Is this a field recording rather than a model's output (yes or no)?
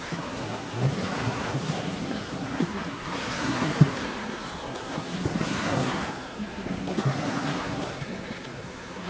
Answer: no